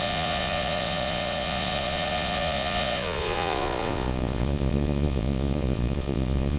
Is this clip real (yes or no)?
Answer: no